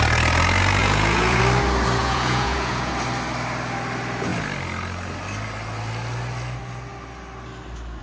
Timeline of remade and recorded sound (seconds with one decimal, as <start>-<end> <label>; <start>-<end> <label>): 0.0-0.8 recorded; 0.8-1.4 remade; 1.4-2.0 recorded; 2.0-2.9 remade; 2.9-8.0 recorded